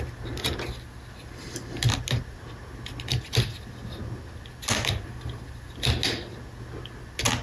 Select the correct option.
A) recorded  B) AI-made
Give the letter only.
A